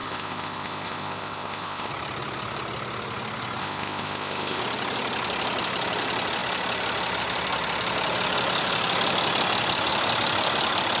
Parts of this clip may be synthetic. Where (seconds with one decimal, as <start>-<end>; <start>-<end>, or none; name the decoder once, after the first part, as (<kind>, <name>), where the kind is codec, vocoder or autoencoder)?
0.0-1.9 (codec, ZipCodec); 3.6-4.6